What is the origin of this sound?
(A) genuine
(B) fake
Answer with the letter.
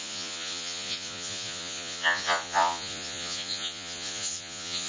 B